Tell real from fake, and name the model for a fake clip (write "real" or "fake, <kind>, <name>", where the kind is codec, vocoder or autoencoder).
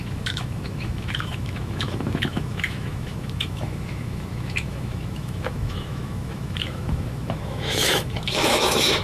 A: fake, autoencoder, DAC-VAE